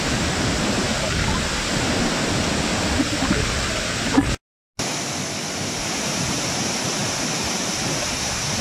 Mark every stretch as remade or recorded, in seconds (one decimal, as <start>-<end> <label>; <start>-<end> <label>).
0.0-0.9 remade; 0.9-5.5 recorded; 5.5-8.6 remade